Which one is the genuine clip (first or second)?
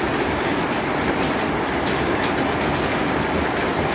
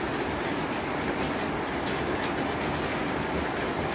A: second